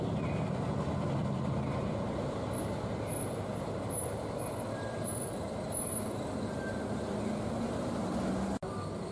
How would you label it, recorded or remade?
recorded